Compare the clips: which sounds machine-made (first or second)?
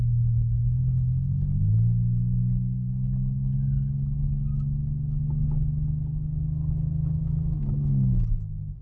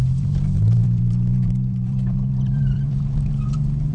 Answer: second